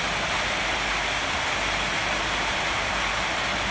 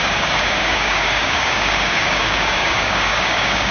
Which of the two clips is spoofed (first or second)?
second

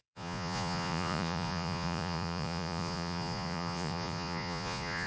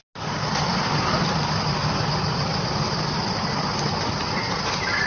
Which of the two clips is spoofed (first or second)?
first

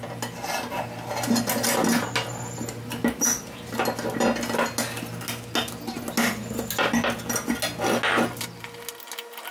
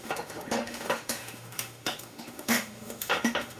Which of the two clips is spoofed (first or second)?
second